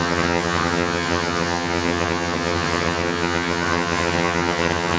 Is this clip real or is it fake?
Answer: fake